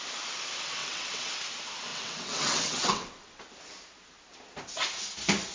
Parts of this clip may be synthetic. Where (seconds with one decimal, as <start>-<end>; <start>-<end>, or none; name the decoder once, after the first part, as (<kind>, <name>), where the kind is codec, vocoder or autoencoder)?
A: 0.8-1.3 (vocoder, WaveNeXt); 1.9-3.4